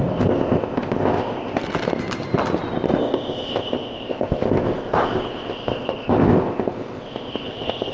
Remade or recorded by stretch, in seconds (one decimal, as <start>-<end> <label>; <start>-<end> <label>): 0.0-1.6 remade; 1.6-3.0 recorded; 3.0-7.9 remade